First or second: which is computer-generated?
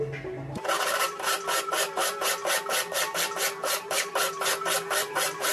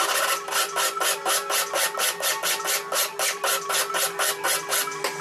first